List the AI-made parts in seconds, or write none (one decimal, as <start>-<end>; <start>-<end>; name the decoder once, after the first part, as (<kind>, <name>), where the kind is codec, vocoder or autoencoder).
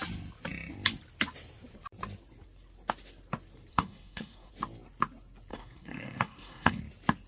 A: 3.7-4.5 (codec, SNAC); 5.5-6.8